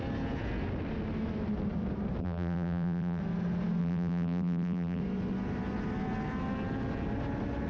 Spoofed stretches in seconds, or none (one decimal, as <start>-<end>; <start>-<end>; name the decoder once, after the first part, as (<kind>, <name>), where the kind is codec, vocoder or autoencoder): 2.2-3.2 (vocoder, BigVGAN v2); 3.8-5.0